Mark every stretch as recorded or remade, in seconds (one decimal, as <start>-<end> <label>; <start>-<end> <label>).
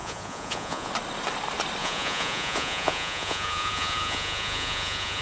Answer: 0.0-0.9 remade; 0.9-1.8 recorded; 1.8-5.2 remade